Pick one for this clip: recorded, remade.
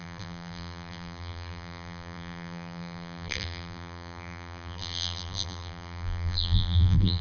remade